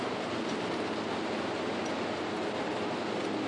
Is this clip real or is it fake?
real